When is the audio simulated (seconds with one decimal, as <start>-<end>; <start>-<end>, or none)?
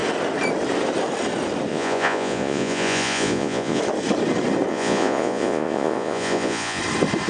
1.7-3.8; 4.7-6.8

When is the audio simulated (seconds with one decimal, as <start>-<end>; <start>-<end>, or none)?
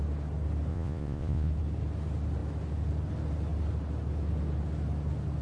0.7-1.5